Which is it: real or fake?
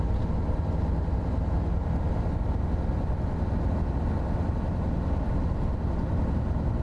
real